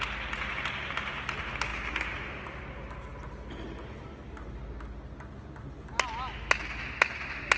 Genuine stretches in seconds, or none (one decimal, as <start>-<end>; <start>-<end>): 0.0-7.6